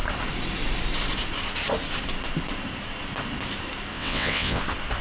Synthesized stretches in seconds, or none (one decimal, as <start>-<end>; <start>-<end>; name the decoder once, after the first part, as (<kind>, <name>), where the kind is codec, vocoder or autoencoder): 3.9-4.6 (vocoder, WaveNeXt)